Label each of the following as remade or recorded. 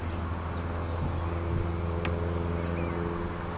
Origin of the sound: recorded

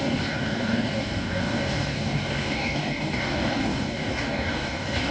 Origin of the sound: remade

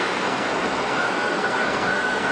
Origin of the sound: remade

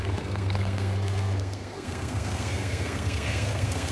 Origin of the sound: remade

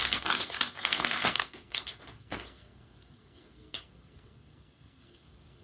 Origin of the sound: remade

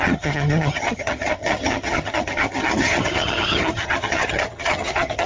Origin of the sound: remade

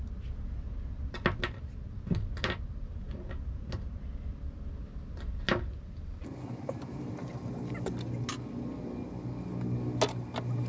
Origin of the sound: recorded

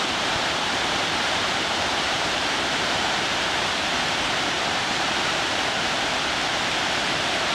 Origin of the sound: remade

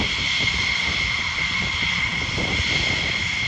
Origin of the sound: remade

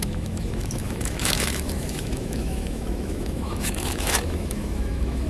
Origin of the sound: remade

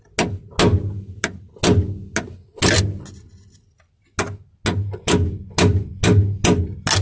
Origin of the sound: recorded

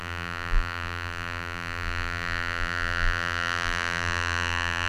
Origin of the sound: remade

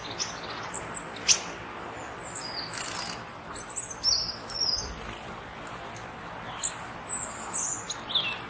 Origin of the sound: recorded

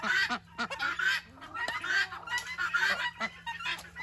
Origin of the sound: recorded